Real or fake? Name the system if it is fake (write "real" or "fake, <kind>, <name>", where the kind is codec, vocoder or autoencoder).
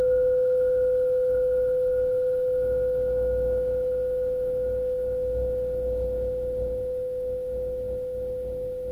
fake, autoencoder, DAC-VAE